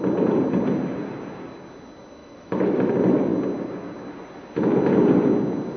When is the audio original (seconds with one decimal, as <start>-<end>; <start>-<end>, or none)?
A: 0.0-2.2; 2.9-5.8